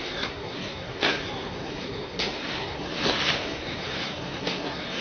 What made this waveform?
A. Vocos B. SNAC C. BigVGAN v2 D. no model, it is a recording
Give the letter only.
B